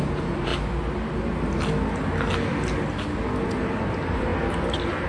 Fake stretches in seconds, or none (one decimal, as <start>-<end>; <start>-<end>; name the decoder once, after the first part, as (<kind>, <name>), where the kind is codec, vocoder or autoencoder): 0.0-0.5 (vocoder, BigVGAN v2); 3.6-5.1